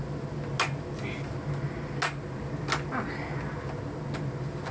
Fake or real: real